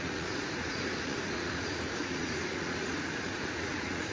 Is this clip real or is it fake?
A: fake